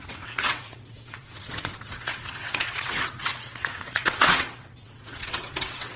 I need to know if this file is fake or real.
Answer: fake